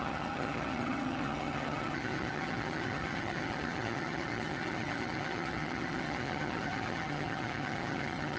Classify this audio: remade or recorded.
remade